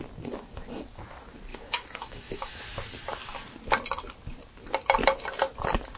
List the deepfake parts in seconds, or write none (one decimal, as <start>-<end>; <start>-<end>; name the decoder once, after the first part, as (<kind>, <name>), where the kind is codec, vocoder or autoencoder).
1.5-2.6 (autoencoder, DAC-VAE)